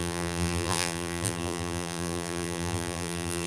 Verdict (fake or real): fake